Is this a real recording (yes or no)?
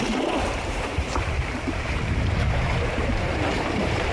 no